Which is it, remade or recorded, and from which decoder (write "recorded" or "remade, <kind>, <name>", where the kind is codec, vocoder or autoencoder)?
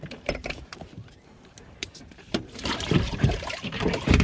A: remade, vocoder, BigVGAN v2